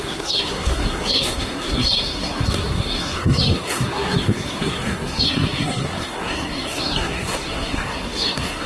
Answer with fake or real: fake